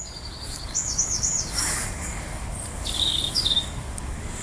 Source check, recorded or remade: remade